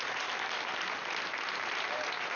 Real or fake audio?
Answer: real